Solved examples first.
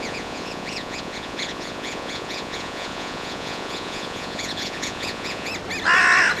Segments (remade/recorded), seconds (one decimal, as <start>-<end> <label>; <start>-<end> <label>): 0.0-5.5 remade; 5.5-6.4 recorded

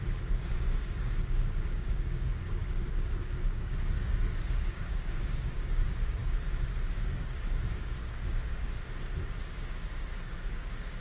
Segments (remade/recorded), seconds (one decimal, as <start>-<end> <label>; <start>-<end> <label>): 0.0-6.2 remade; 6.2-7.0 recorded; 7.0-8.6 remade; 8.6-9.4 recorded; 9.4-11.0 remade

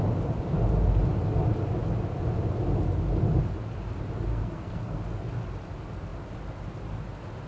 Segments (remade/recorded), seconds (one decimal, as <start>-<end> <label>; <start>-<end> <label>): 0.0-4.3 recorded; 4.3-5.0 remade; 5.0-7.5 recorded

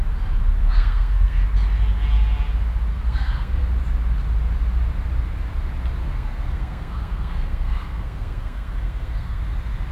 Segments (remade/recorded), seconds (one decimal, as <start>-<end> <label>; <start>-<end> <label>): 0.0-0.6 recorded; 0.6-1.4 remade; 1.4-2.9 recorded; 2.9-3.6 remade; 3.6-6.0 recorded; 6.0-9.4 remade; 9.4-9.9 recorded

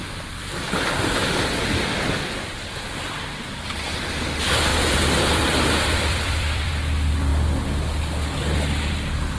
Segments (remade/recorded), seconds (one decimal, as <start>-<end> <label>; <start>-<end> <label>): 0.0-4.7 recorded; 4.7-6.7 remade; 6.7-9.4 recorded